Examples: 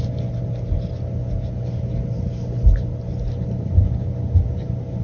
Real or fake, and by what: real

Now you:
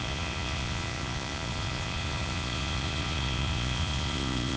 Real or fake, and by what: fake, vocoder, Vocos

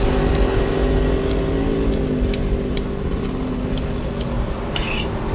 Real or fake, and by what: real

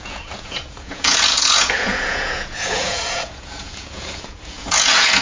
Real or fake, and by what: fake, vocoder, Vocos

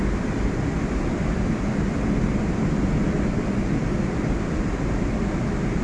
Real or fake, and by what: real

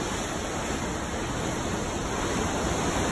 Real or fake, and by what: real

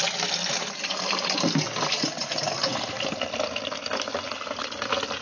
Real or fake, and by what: real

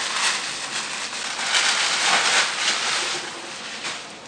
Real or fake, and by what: real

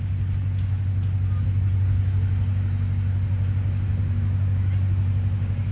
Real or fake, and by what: real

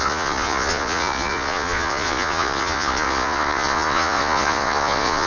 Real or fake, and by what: fake, vocoder, Vocos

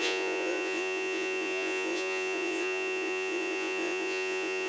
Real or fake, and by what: fake, vocoder, Vocos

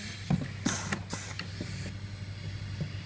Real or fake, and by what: real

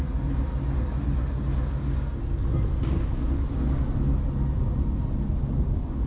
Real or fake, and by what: real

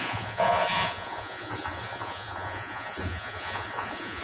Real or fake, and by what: fake, vocoder, Vocos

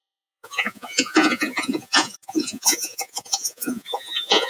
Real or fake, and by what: fake, vocoder, Vocos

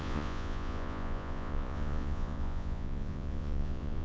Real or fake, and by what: fake, vocoder, Vocos